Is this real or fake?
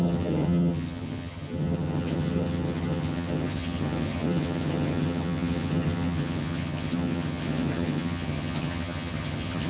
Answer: fake